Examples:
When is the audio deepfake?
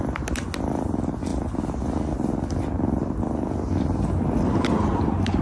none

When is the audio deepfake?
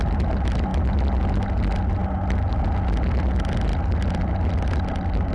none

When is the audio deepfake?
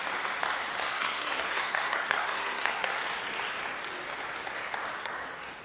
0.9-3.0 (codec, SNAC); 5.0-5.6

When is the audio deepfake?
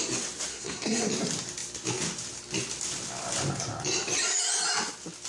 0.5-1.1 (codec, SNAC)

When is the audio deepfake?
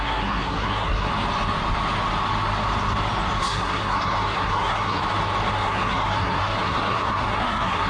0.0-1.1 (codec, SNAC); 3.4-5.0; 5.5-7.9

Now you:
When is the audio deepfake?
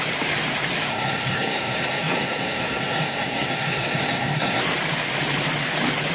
0.9-4.6 (codec, SNAC)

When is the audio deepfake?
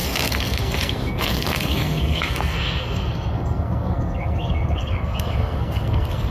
0.0-6.3 (codec, SNAC)